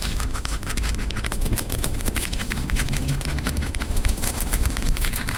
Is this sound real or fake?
fake